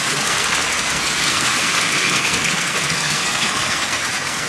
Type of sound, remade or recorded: remade